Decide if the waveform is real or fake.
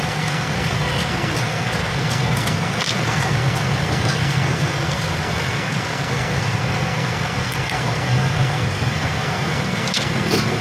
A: fake